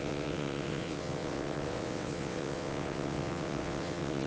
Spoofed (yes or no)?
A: yes